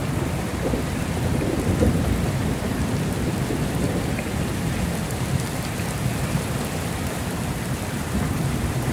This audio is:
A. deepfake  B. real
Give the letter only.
A